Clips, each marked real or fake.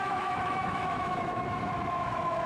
fake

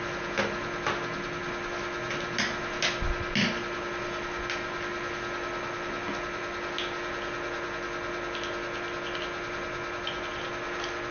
real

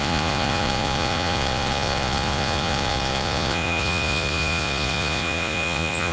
fake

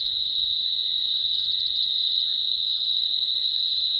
fake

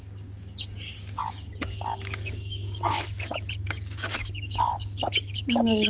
fake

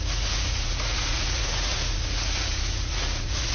fake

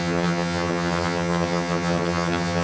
fake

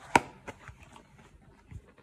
real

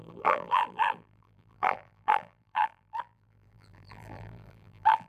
fake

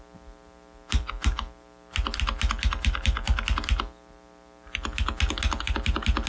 real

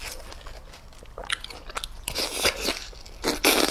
real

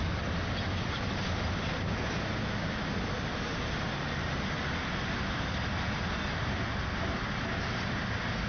real